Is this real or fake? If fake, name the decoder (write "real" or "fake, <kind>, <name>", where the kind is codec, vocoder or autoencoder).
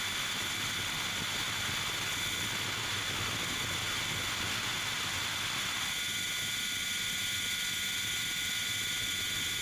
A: real